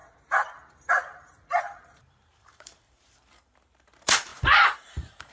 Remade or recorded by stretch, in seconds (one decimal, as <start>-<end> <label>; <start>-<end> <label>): 0.0-1.6 recorded; 1.6-5.3 remade

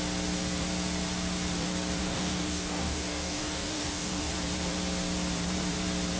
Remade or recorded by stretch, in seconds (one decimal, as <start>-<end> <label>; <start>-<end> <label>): 0.0-2.0 recorded; 2.0-4.3 remade; 4.3-6.2 recorded

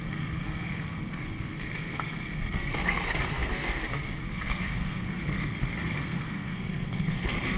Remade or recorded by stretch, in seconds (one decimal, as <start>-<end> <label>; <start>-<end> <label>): 0.0-7.6 remade

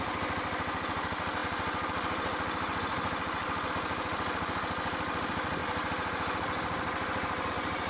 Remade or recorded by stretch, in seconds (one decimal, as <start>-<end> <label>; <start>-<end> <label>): 0.0-7.9 recorded

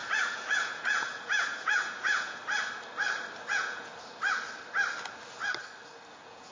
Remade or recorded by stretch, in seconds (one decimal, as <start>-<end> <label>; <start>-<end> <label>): 0.0-2.4 remade; 2.4-3.5 recorded; 3.5-3.9 remade; 3.9-6.1 recorded; 6.1-6.5 remade

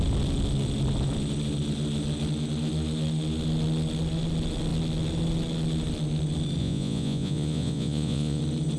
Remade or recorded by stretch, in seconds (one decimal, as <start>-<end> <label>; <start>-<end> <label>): 0.0-6.6 recorded; 6.6-8.4 remade; 8.4-8.8 recorded